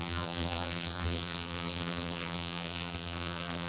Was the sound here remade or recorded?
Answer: remade